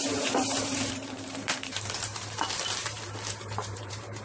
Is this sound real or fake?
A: fake